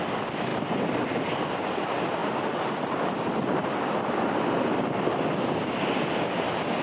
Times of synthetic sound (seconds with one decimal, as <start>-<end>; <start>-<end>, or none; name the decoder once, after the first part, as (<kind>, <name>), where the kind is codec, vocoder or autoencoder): none